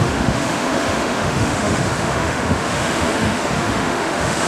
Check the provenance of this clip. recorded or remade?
remade